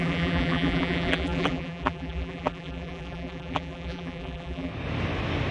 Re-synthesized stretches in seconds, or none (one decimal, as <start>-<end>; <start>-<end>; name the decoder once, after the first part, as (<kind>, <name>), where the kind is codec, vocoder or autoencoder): 0.0-4.7 (vocoder, BigVGAN v2)